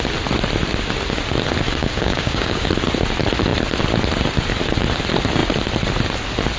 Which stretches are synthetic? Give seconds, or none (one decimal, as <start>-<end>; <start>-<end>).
1.8-2.7